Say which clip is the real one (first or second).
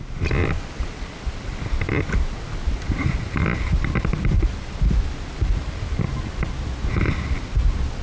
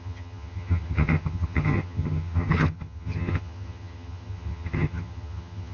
first